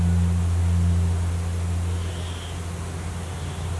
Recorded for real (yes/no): yes